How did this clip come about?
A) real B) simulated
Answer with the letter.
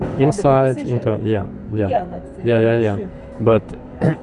B